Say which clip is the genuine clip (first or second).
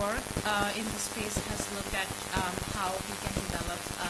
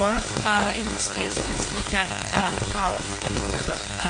first